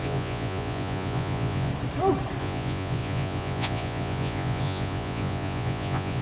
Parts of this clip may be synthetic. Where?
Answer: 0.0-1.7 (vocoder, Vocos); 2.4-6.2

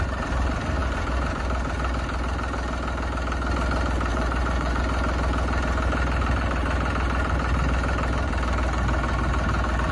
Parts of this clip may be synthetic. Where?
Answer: 4.1-4.8 (vocoder, Vocos)

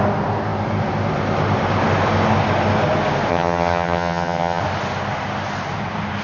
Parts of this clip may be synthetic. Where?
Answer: 3.3-4.6 (vocoder, HiFi-GAN)